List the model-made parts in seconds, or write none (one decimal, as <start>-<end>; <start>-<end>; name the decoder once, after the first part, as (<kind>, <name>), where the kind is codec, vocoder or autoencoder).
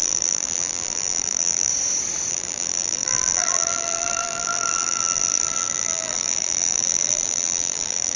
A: 0.0-1.7 (vocoder, BigVGAN v2); 2.3-8.2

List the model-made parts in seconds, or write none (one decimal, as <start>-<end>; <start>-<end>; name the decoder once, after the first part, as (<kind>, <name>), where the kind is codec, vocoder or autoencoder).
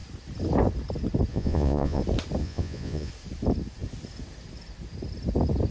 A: 1.3-2.0 (vocoder, Vocos); 2.4-3.1